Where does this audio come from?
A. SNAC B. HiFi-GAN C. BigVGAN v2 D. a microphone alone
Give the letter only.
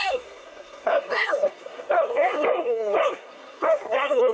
A